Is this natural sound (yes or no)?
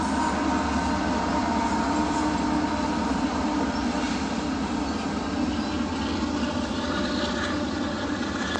yes